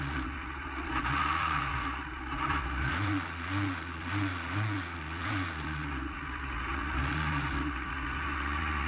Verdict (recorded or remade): remade